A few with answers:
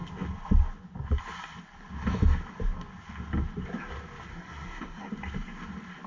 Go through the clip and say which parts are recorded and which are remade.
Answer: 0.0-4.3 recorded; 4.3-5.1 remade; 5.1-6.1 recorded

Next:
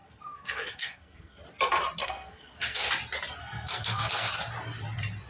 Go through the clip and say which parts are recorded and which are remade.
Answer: 0.0-1.4 remade; 1.4-2.0 recorded; 2.0-2.9 remade; 2.9-3.4 recorded; 3.4-4.3 remade; 4.3-5.3 recorded

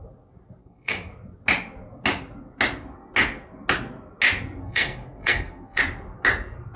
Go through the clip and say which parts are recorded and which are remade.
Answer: 0.0-0.6 recorded; 0.6-1.1 remade; 1.1-4.6 recorded; 4.6-5.8 remade; 5.8-6.8 recorded

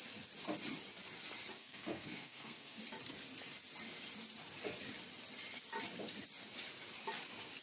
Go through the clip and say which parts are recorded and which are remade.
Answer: 0.0-1.6 recorded; 1.6-2.8 remade; 2.8-7.6 recorded

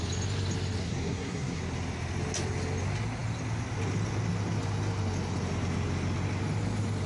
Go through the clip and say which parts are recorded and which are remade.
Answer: 0.0-0.8 recorded; 0.8-1.6 remade; 1.6-7.1 recorded

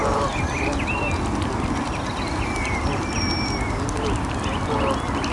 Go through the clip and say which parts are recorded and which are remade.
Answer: 0.0-5.3 recorded